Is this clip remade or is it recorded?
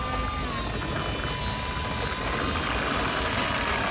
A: recorded